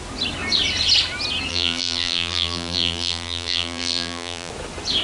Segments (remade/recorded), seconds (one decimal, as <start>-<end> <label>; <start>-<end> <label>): 0.0-1.5 recorded; 1.5-4.5 remade; 4.5-5.0 recorded